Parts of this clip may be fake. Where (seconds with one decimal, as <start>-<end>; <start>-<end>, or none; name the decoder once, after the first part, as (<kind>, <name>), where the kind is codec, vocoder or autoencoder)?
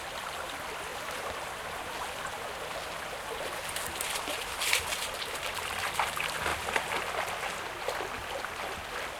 none